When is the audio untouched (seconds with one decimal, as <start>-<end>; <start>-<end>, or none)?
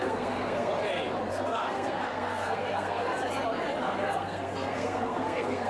0.7-1.3; 3.1-3.8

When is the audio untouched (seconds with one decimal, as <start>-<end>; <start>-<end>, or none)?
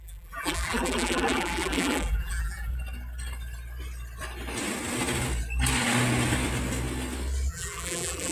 2.7-7.5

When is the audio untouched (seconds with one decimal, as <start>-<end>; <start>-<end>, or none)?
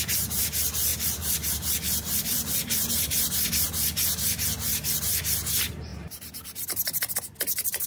0.0-0.9; 3.5-4.7; 5.2-5.9; 7.2-7.9